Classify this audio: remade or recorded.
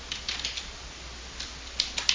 recorded